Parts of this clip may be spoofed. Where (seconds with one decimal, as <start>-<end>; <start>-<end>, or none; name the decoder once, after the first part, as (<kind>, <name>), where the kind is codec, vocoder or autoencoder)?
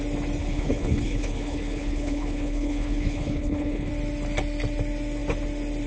0.4-3.9 (codec, HILCodec)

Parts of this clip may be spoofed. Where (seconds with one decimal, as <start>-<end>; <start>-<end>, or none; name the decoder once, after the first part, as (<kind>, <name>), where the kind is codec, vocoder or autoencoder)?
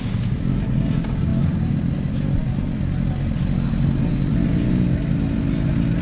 none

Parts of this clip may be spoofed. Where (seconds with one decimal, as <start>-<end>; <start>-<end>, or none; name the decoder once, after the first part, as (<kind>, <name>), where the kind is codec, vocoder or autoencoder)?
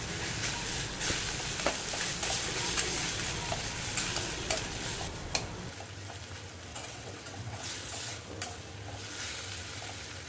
6.7-8.3 (vocoder, WaveNeXt)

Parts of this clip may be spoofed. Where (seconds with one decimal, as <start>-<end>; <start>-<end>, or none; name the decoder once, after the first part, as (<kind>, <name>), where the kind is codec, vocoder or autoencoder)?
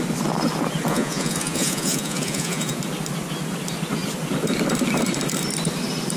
0.9-2.8 (vocoder, Vocos)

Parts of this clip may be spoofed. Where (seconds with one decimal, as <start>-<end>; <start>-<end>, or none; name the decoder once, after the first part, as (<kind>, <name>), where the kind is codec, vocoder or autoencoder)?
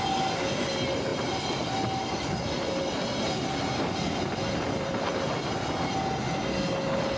none